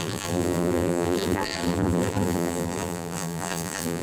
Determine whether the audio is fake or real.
fake